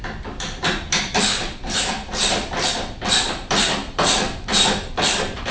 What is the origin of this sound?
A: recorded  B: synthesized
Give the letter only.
B